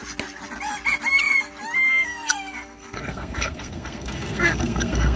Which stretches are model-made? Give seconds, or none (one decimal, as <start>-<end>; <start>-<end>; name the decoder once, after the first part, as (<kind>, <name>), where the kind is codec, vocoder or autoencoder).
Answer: 1.9-5.2 (codec, SNAC)